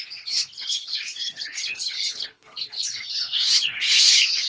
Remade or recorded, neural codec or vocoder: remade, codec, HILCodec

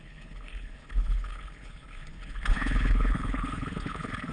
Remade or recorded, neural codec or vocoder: remade, codec, HILCodec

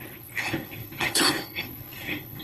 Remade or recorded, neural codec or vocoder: remade, codec, HILCodec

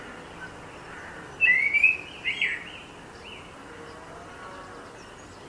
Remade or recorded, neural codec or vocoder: recorded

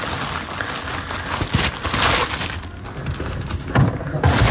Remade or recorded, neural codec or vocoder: recorded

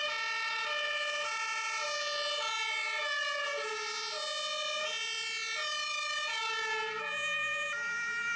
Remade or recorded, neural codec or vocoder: recorded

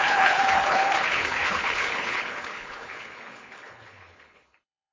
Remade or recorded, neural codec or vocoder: remade, codec, HILCodec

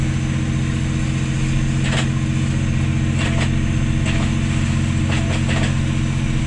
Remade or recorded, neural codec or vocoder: recorded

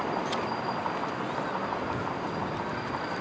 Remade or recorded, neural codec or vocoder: recorded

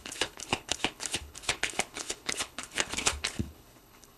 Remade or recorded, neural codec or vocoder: remade, codec, HILCodec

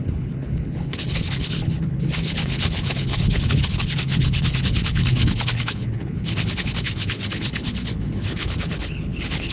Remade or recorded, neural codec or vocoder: remade, codec, HILCodec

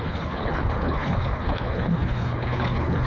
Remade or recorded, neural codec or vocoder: remade, codec, HILCodec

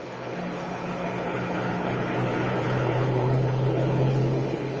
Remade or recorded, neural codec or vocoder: remade, codec, HILCodec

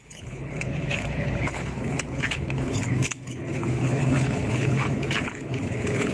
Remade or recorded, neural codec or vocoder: remade, codec, HILCodec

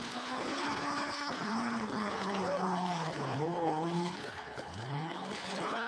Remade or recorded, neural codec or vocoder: remade, codec, HILCodec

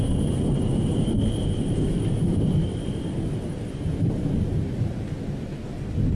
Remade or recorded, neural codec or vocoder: recorded